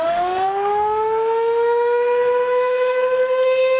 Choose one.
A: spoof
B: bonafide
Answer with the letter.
A